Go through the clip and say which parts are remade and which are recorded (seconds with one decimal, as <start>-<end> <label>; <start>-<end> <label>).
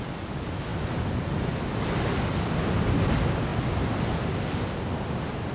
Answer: 0.0-5.5 recorded